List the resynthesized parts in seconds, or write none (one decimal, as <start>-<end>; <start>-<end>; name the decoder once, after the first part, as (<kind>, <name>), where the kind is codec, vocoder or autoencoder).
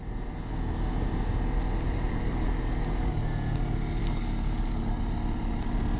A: 4.0-5.0 (codec, DAC)